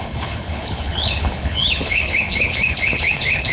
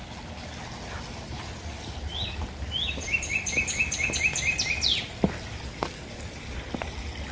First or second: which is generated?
first